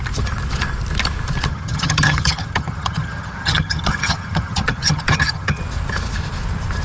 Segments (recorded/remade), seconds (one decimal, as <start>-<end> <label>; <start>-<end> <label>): 0.0-1.5 recorded; 1.5-5.6 remade; 5.6-6.8 recorded